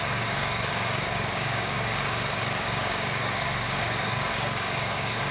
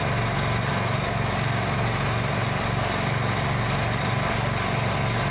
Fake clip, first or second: first